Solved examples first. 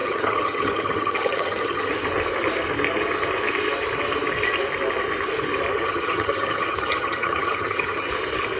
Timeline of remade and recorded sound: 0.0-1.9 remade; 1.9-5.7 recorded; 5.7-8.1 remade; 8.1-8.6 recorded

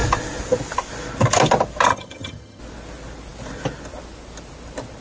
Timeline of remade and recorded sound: 0.0-1.9 recorded; 1.9-2.6 remade; 2.6-5.0 recorded

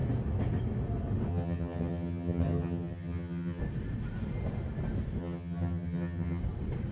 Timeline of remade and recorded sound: 0.0-1.3 recorded; 1.3-3.6 remade; 3.6-5.2 recorded; 5.2-6.4 remade; 6.4-6.9 recorded

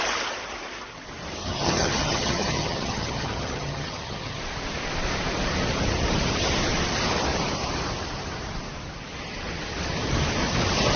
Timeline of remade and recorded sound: 0.0-1.4 recorded; 1.4-4.4 remade; 4.4-11.0 recorded

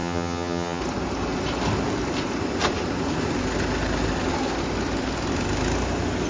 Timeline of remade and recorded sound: 0.0-0.8 remade; 0.8-6.3 recorded

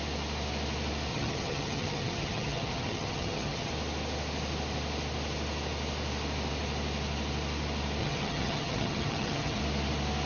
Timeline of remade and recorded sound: 0.0-1.1 recorded; 1.1-3.7 remade; 3.7-8.0 recorded; 8.0-9.6 remade; 9.6-10.3 recorded

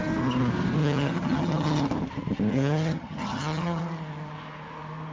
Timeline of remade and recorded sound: 0.0-0.8 recorded; 0.8-1.8 remade; 1.8-2.5 recorded; 2.5-3.8 remade; 3.8-5.1 recorded